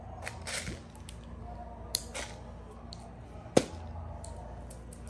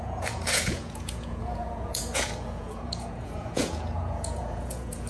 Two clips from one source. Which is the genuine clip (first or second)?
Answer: first